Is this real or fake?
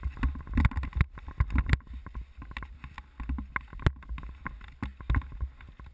real